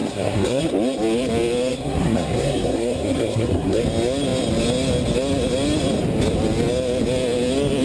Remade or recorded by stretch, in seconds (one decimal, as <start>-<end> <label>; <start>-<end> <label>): 0.0-0.6 remade; 0.6-1.7 recorded; 1.7-3.8 remade; 3.8-7.8 recorded